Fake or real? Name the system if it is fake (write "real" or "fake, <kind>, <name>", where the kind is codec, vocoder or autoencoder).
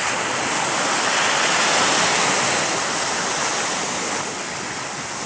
real